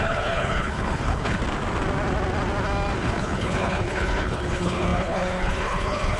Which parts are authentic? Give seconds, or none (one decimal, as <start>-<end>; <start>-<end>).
1.4-3.0